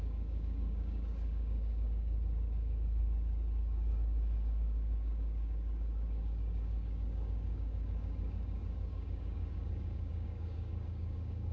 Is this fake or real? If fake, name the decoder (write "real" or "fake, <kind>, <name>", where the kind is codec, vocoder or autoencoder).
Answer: fake, codec, DAC